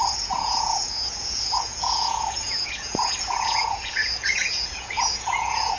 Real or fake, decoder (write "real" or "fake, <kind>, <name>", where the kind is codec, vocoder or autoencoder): fake, vocoder, Vocos